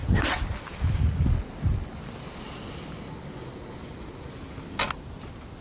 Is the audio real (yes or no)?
yes